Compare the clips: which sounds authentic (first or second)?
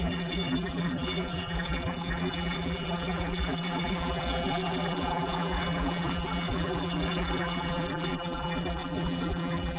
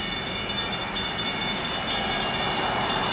second